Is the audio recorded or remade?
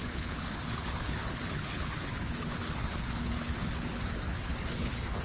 remade